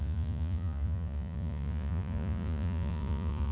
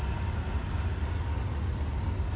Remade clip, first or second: first